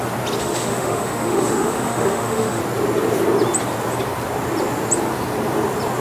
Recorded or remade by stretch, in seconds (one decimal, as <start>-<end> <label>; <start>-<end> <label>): 0.0-0.4 recorded; 0.4-2.6 remade; 2.6-6.0 recorded